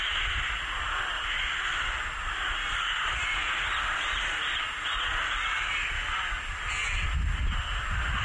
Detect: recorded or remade recorded